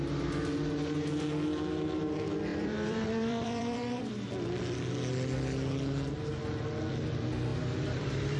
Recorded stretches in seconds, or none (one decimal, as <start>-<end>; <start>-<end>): 0.0-2.5; 4.1-7.5